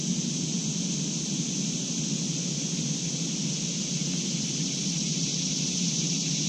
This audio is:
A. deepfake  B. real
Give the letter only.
B